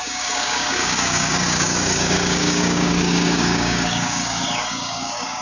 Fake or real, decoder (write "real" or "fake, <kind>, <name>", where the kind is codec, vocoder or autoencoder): fake, codec, DAC